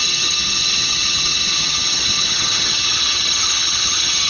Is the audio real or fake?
fake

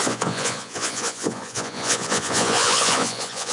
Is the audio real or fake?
fake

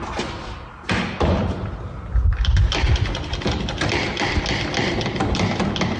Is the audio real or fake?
real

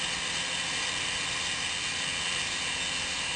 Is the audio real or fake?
real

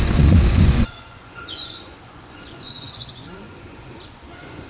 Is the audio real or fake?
fake